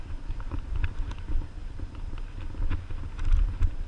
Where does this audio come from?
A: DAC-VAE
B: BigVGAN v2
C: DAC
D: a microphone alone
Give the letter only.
D